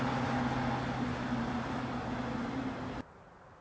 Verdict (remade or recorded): recorded